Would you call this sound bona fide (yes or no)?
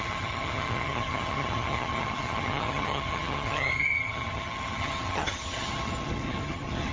no